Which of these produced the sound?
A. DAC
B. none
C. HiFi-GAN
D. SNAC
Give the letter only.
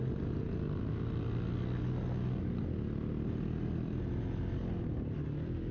B